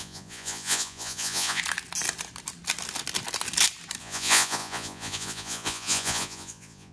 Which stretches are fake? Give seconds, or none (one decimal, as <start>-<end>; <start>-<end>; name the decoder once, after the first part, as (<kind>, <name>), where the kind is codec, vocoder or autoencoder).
0.0-1.6 (vocoder, Vocos); 4.0-6.9